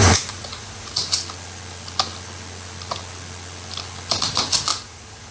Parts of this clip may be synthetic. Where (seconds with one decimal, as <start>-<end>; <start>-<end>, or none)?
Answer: 0.0-1.0; 4.2-5.3